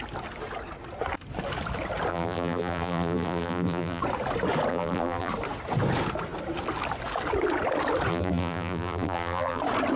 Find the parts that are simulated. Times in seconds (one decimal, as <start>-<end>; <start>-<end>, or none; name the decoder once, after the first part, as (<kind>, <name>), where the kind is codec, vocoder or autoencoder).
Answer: 2.1-4.0 (vocoder, BigVGAN v2); 4.7-5.3; 8.1-9.6